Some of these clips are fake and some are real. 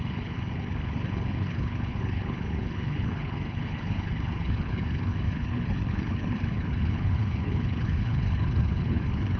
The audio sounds fake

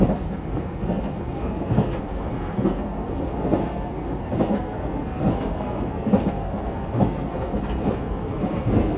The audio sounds fake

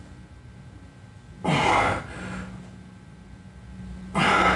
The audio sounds real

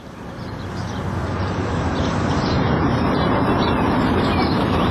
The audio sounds fake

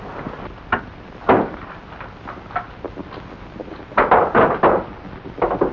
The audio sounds real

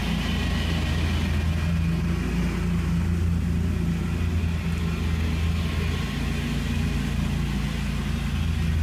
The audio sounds real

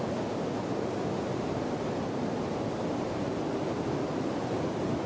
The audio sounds real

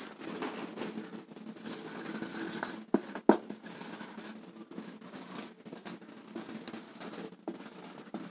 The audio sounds real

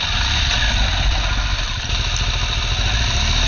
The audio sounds real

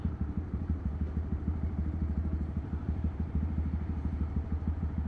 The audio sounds fake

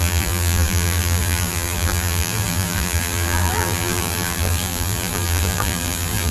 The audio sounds fake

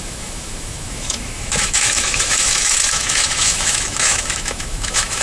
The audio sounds fake